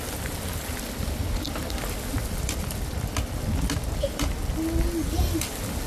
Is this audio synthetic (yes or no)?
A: no